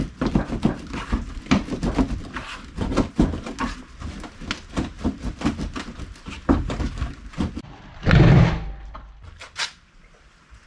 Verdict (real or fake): real